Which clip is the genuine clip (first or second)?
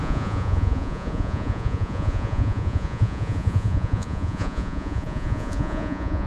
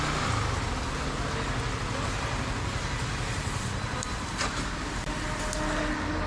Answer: second